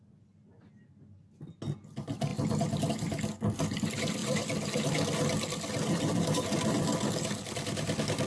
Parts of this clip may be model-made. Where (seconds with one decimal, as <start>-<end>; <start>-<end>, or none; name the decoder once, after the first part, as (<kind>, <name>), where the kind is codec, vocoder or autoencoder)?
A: none